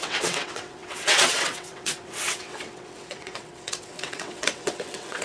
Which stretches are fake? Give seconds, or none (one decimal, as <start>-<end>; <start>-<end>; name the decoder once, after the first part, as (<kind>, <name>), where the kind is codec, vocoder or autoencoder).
0.0-5.2 (vocoder, WaveNeXt)